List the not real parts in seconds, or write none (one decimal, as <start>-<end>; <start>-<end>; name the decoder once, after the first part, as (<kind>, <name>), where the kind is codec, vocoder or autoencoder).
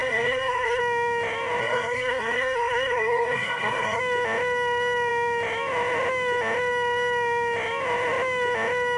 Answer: 0.0-0.8 (codec, SNAC); 1.6-4.0